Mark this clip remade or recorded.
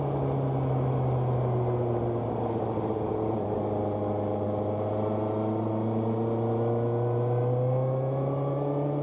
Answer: recorded